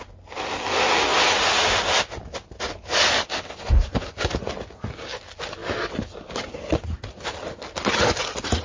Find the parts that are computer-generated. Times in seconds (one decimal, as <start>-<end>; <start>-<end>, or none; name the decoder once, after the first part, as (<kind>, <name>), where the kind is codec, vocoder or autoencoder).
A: none